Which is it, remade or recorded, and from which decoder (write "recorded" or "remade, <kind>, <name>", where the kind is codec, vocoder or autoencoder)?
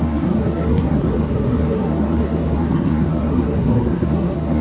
remade, codec, SNAC